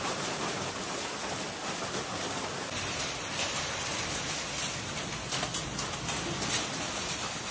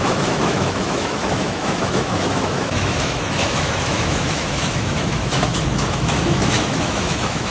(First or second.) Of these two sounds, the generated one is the second